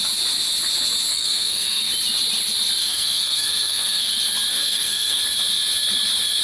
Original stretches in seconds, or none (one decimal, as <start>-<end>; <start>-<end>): 0.0-1.1; 1.9-2.8; 4.1-4.5; 5.2-6.4